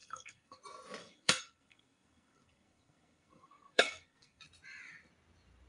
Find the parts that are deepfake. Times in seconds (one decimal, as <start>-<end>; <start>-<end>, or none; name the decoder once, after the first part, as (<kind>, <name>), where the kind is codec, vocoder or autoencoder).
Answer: 0.0-0.6 (codec, SNAC); 1.0-4.4